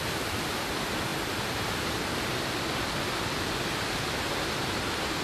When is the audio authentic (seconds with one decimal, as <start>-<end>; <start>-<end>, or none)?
0.0-5.2